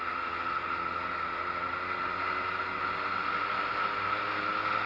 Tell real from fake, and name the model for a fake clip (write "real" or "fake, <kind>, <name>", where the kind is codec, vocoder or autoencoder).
real